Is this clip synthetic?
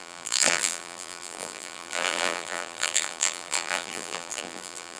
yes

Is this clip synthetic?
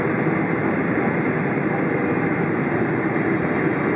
yes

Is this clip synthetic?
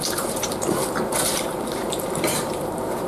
yes